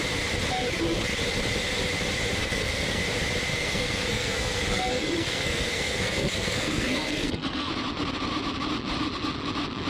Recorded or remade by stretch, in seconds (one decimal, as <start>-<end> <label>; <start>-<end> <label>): 0.0-2.4 recorded; 2.4-3.0 remade; 3.0-3.5 recorded; 3.5-7.7 remade; 7.7-9.9 recorded